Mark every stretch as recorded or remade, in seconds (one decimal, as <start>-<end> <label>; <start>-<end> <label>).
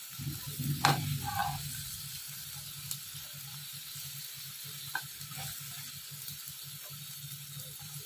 0.0-8.1 recorded